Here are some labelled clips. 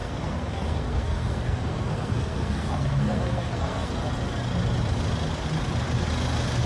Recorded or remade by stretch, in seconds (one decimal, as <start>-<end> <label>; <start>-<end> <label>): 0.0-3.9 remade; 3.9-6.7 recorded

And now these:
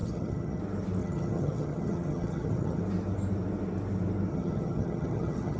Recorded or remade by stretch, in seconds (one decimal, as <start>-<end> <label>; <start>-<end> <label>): 0.0-0.6 remade; 0.6-1.0 recorded; 1.0-2.8 remade; 2.8-4.3 recorded; 4.3-5.6 remade

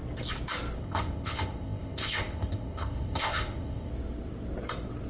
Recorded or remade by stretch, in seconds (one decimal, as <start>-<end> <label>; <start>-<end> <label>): 0.0-0.8 recorded; 0.8-3.9 remade; 3.9-5.1 recorded

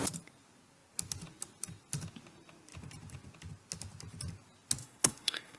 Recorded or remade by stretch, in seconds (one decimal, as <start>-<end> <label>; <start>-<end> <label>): 0.0-4.8 recorded; 4.8-5.6 remade

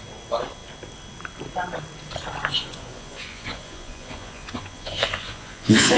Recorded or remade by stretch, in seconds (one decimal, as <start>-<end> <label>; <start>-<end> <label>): 0.0-2.4 recorded; 2.4-6.0 remade

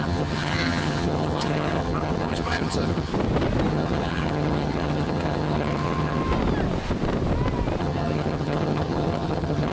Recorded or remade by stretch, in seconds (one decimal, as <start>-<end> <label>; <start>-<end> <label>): 0.0-3.1 remade; 3.1-3.7 recorded; 3.7-6.2 remade; 6.2-7.8 recorded; 7.8-9.7 remade